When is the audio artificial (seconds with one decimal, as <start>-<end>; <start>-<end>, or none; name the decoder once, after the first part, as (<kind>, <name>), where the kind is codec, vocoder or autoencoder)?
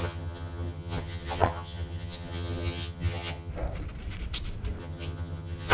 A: 0.0-3.5 (vocoder, HiFi-GAN); 4.8-5.7